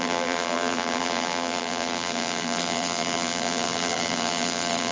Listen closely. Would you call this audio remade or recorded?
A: remade